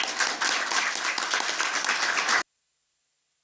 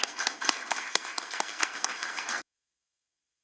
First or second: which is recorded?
first